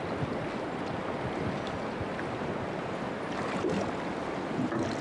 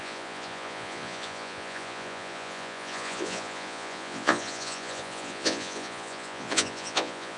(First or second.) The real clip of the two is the first